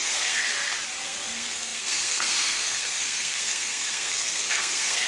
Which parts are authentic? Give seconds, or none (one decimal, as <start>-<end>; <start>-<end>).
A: 0.5-1.0